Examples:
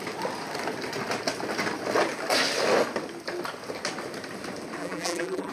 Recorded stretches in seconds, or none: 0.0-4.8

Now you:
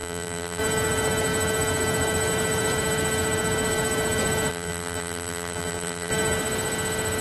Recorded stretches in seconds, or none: 0.6-4.5; 6.1-7.2

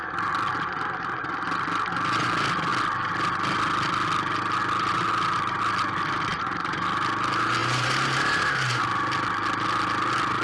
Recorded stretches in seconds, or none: 0.0-6.3; 6.8-7.6; 8.8-10.4

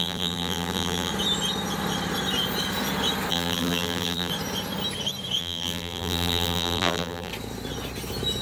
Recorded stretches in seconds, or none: 1.1-3.3; 4.3-5.4; 7.3-8.4

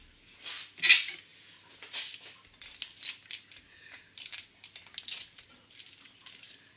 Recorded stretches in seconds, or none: 0.0-6.8

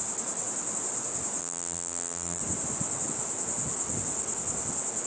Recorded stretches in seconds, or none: 0.0-1.4; 2.4-5.1

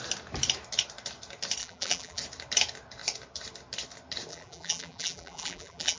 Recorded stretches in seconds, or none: 0.0-1.6; 2.2-4.3